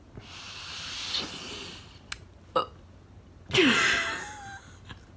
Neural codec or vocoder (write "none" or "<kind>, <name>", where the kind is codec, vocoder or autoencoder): none